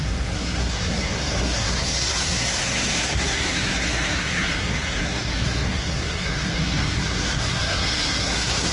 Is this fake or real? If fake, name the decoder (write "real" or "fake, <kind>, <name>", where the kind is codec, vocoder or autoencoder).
fake, codec, SNAC